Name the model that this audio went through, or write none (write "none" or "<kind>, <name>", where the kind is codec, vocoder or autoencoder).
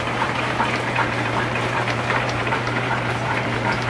vocoder, BigVGAN v2